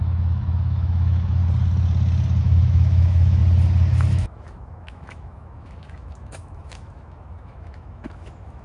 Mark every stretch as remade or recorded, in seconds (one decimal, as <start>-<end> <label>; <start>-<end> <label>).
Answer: 0.0-1.4 remade; 1.4-2.4 recorded; 2.4-3.4 remade; 3.4-4.1 recorded; 4.1-8.6 remade